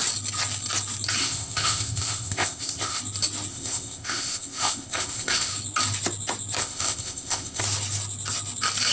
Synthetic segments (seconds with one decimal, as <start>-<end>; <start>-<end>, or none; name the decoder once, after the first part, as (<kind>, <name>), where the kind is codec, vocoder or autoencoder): 1.2-3.0 (codec, ZipCodec); 3.5-5.5; 6.6-7.6